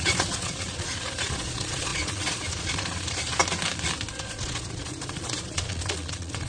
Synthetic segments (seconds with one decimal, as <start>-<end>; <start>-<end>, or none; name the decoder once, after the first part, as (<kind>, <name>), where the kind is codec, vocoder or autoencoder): 0.0-3.4 (vocoder, Vocos); 4.1-6.5